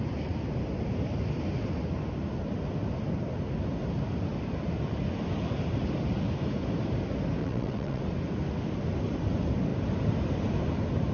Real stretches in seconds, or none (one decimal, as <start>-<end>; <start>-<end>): 0.0-7.4; 8.0-11.1